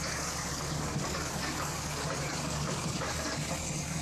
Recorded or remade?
remade